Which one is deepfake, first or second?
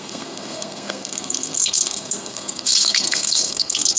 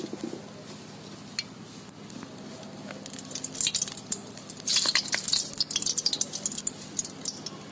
first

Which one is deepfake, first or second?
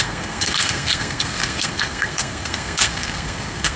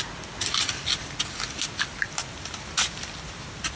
first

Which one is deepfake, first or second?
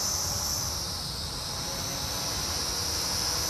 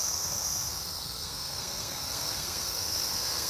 second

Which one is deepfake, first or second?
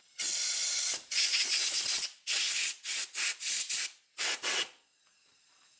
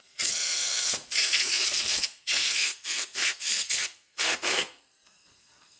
second